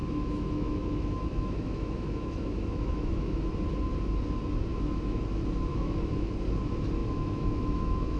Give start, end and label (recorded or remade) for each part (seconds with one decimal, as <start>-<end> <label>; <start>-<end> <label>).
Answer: 0.0-3.5 remade; 3.5-4.7 recorded; 4.7-5.2 remade; 5.2-5.7 recorded; 5.7-6.3 remade; 6.3-7.0 recorded; 7.0-8.2 remade